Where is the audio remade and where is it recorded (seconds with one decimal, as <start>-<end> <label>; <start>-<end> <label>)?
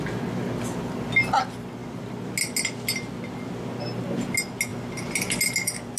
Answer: 0.0-6.0 recorded